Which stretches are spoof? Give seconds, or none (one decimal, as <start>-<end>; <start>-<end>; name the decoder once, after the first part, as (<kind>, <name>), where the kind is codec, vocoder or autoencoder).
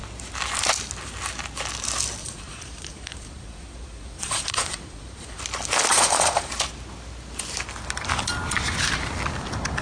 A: 2.2-5.4 (vocoder, Vocos); 5.9-6.5